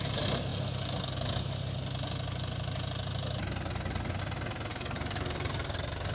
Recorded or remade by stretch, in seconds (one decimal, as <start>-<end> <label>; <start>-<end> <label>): 0.0-4.7 recorded; 4.7-5.5 remade; 5.5-6.1 recorded